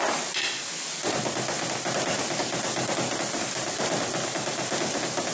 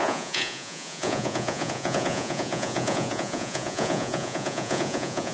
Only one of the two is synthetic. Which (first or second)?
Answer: second